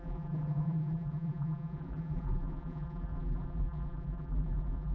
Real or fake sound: fake